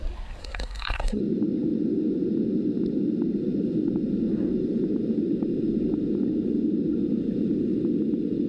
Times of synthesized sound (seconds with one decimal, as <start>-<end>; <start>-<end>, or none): 0.4-1.2